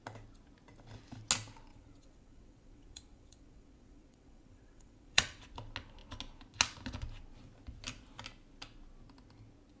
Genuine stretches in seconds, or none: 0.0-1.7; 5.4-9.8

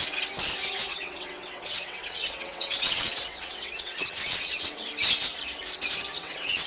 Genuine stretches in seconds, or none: 0.0-0.9; 4.9-6.1

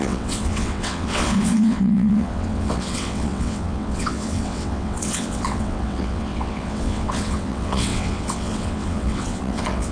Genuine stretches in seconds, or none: none